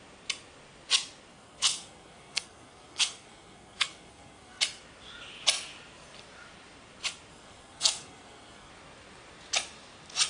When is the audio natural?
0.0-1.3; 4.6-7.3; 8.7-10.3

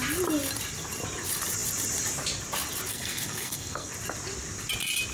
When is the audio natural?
0.0-2.9; 3.9-5.1

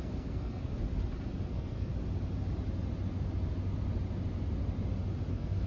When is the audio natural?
0.6-1.5; 1.9-5.3

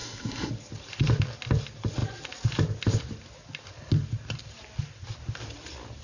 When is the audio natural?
0.5-6.0

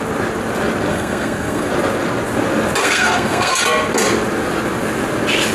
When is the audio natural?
0.0-0.9; 1.7-2.8; 3.6-5.5

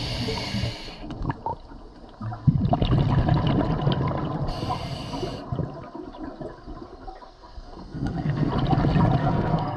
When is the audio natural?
0.0-6.9; 8.5-9.2

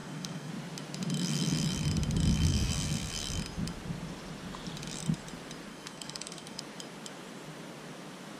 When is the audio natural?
0.5-2.5; 3.1-5.7; 6.6-8.4

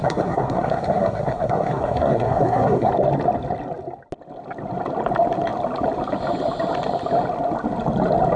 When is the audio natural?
2.9-8.4